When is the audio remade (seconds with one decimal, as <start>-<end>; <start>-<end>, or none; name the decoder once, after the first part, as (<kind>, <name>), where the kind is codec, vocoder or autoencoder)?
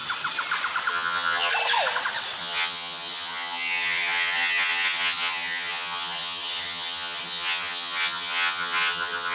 0.9-1.5 (vocoder, HiFi-GAN); 2.4-9.3